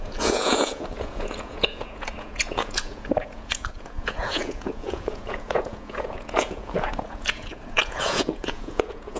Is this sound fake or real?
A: fake